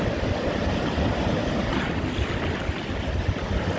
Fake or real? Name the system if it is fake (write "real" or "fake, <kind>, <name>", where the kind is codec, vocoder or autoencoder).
real